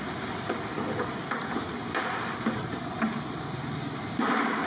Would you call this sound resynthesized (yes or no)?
no